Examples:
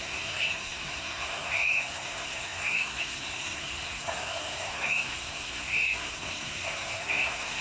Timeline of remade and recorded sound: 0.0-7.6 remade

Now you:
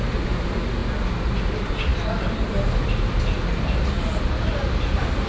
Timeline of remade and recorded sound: 0.0-5.3 recorded

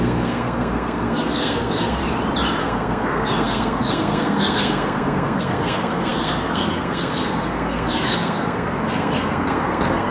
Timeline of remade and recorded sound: 0.0-2.0 remade; 2.0-2.6 recorded; 2.6-10.1 remade

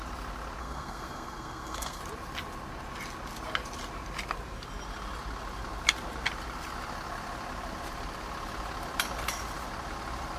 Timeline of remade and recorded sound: 0.0-0.6 recorded; 0.6-2.0 remade; 2.0-10.4 recorded

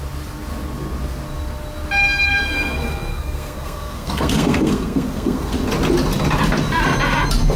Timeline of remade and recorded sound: 0.0-2.3 recorded; 2.3-5.5 remade; 5.5-7.6 recorded

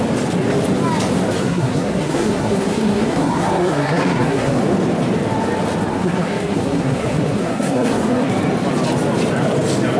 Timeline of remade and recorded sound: 0.0-1.4 recorded; 1.4-4.6 remade; 4.6-5.9 recorded; 5.9-8.3 remade; 8.3-10.0 recorded

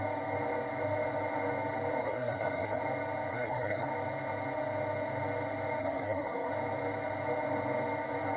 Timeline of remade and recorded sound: 0.0-2.0 recorded; 2.0-2.8 remade; 2.8-3.3 recorded; 3.3-3.9 remade; 3.9-5.8 recorded; 5.8-6.5 remade; 6.5-8.4 recorded